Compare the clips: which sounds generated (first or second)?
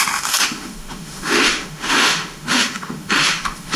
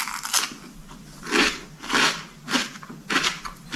first